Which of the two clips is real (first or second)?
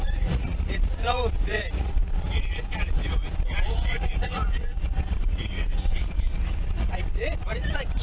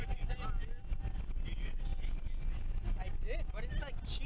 second